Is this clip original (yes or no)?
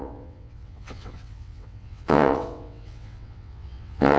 no